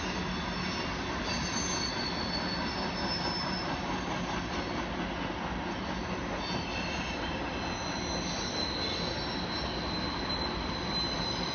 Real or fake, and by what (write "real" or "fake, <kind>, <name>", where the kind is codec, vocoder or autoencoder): real